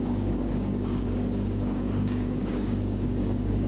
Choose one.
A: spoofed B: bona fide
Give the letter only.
A